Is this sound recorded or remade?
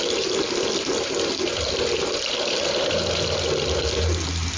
recorded